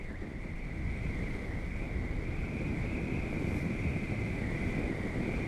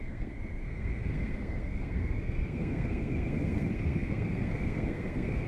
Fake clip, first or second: second